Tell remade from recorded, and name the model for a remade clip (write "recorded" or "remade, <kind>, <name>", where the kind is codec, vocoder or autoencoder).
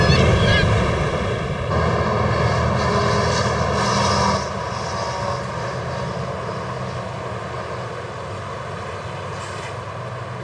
recorded